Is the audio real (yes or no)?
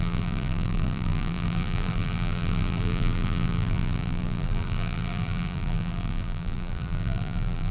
no